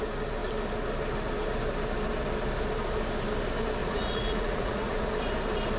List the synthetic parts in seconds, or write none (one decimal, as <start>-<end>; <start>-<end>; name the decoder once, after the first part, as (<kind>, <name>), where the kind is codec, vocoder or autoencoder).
3.8-5.1 (vocoder, Vocos)